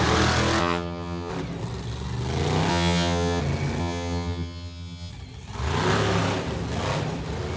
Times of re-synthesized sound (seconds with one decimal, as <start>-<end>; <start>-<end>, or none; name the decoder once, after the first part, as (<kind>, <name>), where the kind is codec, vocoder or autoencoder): 0.6-1.3 (vocoder, HiFi-GAN); 2.7-3.4; 3.8-5.1